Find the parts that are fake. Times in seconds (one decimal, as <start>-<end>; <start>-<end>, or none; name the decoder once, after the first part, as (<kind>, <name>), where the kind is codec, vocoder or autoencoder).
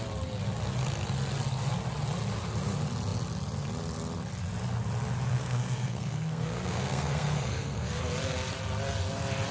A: 5.3-8.0 (codec, SNAC)